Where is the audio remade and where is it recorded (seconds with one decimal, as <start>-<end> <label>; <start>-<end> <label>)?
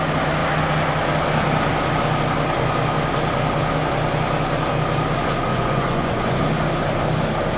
0.0-5.5 recorded; 5.5-6.4 remade; 6.4-7.6 recorded